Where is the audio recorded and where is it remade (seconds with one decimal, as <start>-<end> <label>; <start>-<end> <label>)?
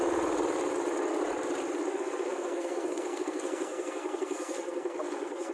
0.0-1.9 recorded; 1.9-5.5 remade